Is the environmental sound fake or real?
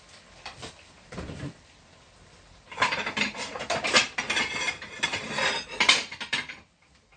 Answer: fake